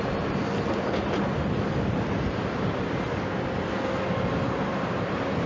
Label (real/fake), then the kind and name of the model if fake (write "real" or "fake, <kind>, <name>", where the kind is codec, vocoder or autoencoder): real